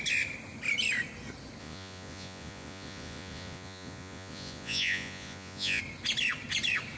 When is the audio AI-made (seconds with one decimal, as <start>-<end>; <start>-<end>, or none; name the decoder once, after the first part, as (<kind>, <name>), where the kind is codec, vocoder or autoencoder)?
1.6-5.8 (vocoder, Vocos)